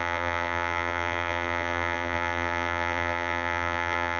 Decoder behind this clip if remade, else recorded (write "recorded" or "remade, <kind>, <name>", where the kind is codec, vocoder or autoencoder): remade, vocoder, BigVGAN v2